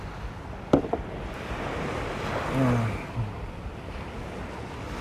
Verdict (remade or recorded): recorded